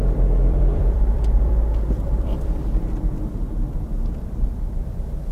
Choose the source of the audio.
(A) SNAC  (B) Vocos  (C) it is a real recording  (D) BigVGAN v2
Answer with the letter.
D